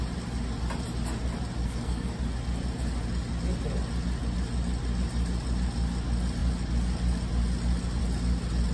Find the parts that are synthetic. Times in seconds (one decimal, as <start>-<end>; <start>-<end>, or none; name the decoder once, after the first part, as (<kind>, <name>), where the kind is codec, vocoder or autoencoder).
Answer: 1.6-2.2 (codec, SNAC)